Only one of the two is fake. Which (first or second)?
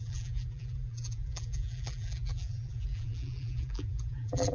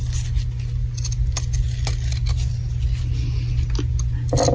first